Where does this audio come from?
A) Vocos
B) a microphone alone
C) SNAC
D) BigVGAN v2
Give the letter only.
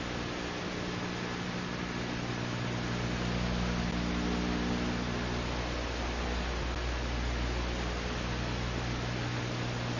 B